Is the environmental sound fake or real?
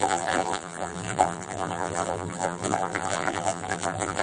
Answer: fake